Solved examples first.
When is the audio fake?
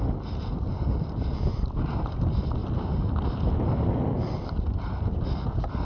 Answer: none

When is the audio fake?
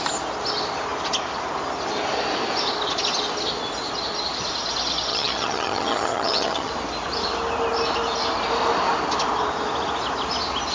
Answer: 5.1-6.7 (vocoder, HiFi-GAN)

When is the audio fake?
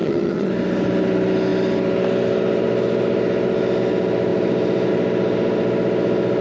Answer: 0.0-0.5 (vocoder, HiFi-GAN)